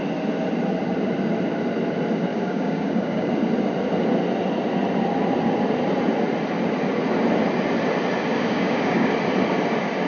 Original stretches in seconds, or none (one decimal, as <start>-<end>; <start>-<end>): 0.0-2.3; 3.3-8.3; 9.1-10.1